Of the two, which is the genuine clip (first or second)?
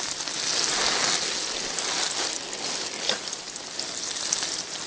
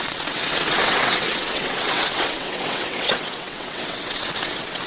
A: first